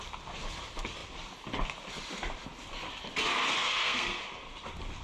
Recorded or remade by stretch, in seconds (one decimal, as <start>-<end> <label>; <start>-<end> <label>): 0.0-3.6 recorded; 3.6-4.2 remade; 4.2-5.0 recorded